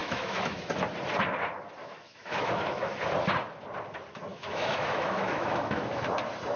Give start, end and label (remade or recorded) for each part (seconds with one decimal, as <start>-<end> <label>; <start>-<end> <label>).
0.0-0.7 remade; 0.7-1.8 recorded; 1.8-3.0 remade; 3.0-4.3 recorded; 4.3-6.0 remade; 6.0-6.6 recorded